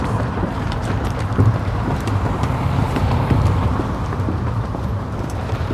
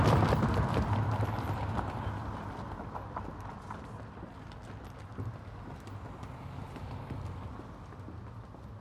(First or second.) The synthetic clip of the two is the first